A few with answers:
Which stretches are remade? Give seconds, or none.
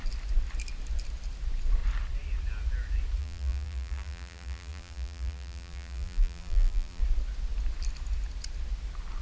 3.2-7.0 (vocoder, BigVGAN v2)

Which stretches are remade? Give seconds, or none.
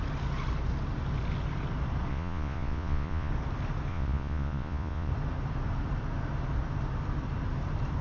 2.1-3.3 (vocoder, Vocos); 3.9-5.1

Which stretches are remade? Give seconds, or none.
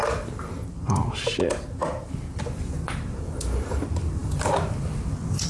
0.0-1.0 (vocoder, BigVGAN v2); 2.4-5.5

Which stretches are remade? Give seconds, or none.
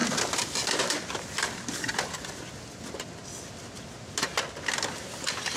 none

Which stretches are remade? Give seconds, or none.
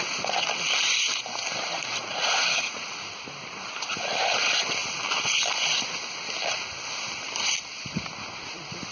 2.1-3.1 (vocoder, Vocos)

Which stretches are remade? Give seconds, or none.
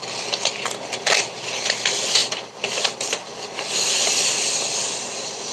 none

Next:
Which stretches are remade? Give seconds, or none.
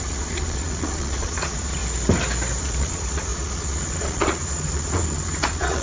0.0-1.8 (vocoder, Vocos); 2.6-5.8